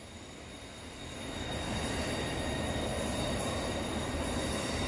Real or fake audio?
real